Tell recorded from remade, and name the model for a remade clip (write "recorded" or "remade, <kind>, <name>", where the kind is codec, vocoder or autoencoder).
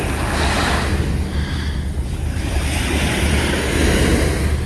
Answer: recorded